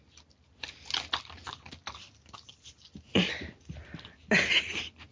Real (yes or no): yes